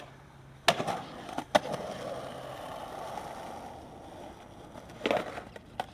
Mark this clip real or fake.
real